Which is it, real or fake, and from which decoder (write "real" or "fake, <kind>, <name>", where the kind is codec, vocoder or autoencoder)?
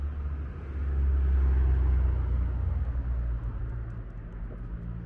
real